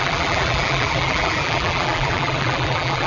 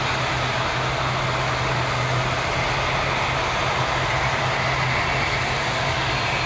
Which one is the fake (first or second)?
first